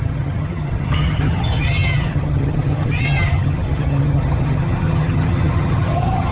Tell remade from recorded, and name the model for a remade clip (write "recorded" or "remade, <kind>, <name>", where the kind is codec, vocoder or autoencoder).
remade, vocoder, HiFi-GAN